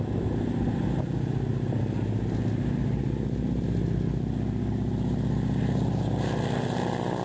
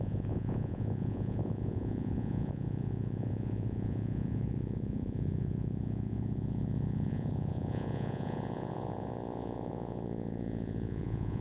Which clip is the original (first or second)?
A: first